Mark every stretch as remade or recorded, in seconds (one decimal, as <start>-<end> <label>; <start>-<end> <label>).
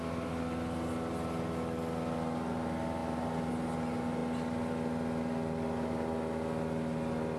0.0-7.4 recorded